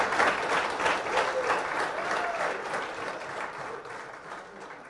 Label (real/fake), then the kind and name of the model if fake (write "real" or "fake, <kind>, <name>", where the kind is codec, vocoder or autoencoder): real